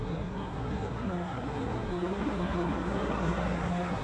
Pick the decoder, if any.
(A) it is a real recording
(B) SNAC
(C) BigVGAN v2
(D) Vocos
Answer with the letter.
B